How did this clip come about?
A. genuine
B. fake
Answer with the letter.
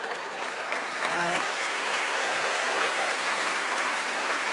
B